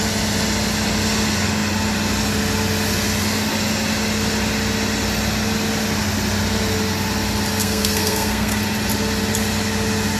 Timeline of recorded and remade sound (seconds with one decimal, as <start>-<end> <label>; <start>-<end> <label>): 0.0-7.6 recorded; 7.6-8.6 remade; 8.6-10.2 recorded